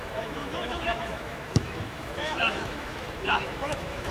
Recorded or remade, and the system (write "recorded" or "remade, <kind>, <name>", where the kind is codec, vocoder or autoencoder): remade, autoencoder, DAC-VAE